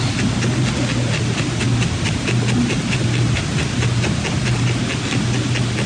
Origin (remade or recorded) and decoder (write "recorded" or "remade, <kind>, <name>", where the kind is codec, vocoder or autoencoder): recorded